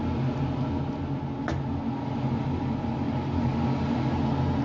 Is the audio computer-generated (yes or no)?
no